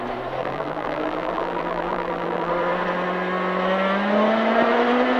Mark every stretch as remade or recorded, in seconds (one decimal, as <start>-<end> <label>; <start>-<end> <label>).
0.0-0.4 recorded; 0.4-2.5 remade; 2.5-5.2 recorded